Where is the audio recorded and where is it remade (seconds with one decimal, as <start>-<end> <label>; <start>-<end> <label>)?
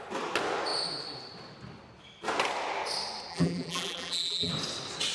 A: 0.0-3.3 recorded; 3.3-4.5 remade; 4.5-5.1 recorded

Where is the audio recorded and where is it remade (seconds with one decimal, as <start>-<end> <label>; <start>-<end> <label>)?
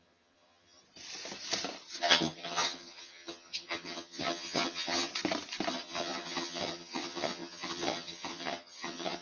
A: 0.0-0.8 remade; 0.8-2.0 recorded; 2.0-5.1 remade; 5.1-5.7 recorded; 5.7-9.2 remade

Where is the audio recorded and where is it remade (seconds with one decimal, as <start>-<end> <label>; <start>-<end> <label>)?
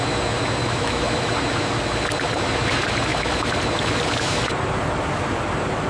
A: 0.0-0.6 recorded; 0.6-1.3 remade; 1.3-5.9 recorded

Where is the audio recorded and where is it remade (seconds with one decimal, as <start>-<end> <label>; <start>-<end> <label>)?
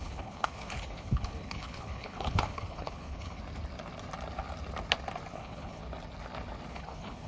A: 0.0-3.4 remade; 3.4-5.3 recorded; 5.3-5.8 remade; 5.8-6.7 recorded; 6.7-7.3 remade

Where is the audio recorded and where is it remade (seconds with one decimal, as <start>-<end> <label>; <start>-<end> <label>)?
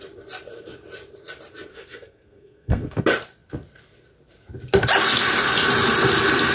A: 0.0-1.7 recorded; 1.7-3.0 remade; 3.0-6.5 recorded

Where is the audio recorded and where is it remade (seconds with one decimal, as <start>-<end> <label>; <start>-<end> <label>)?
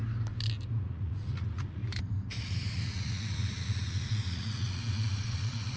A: 0.0-0.7 recorded; 0.7-1.8 remade; 1.8-2.4 recorded; 2.4-5.8 remade